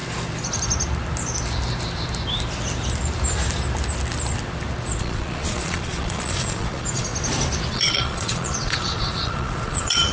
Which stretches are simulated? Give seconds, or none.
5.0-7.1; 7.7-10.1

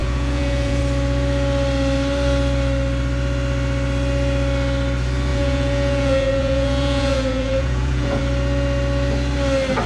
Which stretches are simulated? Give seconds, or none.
0.0-0.8; 5.3-8.2

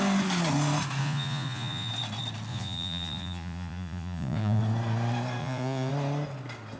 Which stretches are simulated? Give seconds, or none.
1.0-1.9; 2.5-4.6; 5.4-5.9